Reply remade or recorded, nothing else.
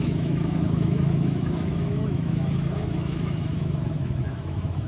remade